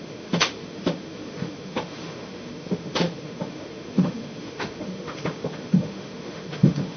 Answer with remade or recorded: remade